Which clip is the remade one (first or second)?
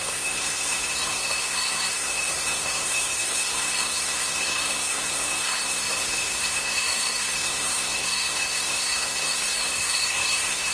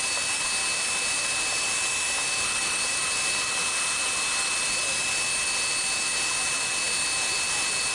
first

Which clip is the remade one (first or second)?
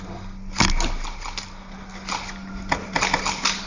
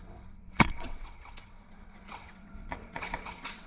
second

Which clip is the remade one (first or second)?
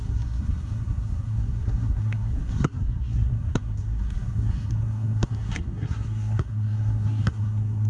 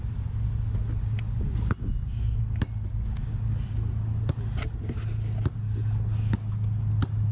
first